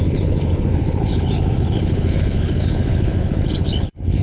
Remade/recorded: remade